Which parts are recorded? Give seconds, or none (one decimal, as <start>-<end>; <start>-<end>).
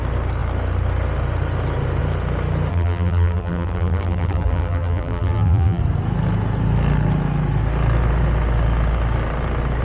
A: 0.0-2.7; 5.8-9.8